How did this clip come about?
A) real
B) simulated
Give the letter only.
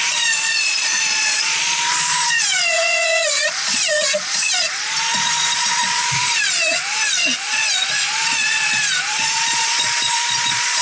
B